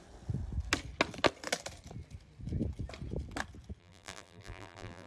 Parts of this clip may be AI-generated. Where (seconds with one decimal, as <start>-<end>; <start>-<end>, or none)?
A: 3.8-5.1